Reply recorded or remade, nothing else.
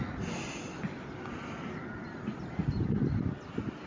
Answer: recorded